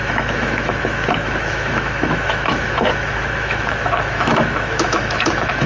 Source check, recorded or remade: remade